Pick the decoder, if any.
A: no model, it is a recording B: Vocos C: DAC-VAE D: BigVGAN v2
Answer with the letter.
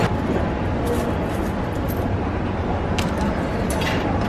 A